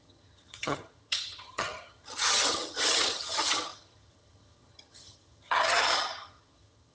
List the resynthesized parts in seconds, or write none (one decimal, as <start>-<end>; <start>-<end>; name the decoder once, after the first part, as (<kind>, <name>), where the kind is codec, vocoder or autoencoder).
0.0-6.9 (vocoder, HiFi-GAN)